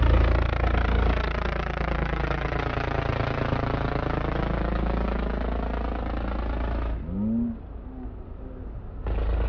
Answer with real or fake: real